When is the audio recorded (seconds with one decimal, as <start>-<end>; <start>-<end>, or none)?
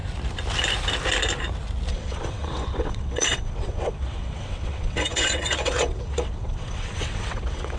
0.0-1.9